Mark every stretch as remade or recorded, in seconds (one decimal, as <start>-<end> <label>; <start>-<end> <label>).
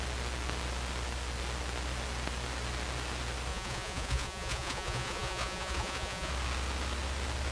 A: 0.0-3.5 recorded; 3.5-6.3 remade; 6.3-7.5 recorded